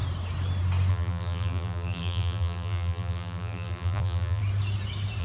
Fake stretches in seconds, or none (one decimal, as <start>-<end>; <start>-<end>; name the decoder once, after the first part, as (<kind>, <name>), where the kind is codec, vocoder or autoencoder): 0.9-4.4 (vocoder, BigVGAN v2)